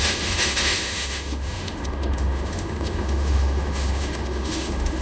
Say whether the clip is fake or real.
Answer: fake